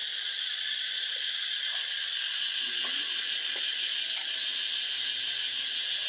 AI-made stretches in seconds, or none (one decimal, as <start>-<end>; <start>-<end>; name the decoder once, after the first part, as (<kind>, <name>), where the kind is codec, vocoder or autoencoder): 0.0-0.8 (vocoder, Vocos); 1.4-4.4